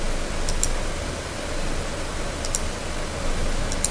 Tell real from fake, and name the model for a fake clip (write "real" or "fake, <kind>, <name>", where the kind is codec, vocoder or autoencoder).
real